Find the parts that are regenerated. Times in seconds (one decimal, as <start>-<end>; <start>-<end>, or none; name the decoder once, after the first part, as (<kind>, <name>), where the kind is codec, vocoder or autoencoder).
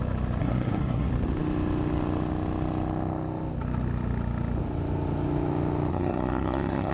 0.4-1.1 (codec, SNAC); 5.9-6.9